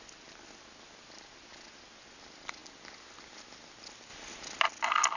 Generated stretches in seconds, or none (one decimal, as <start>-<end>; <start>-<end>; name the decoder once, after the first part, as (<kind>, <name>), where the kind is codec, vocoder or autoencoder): none